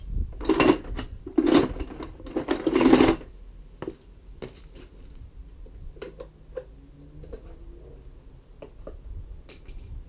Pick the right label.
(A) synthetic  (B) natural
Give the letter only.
B